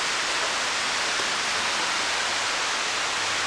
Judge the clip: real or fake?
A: real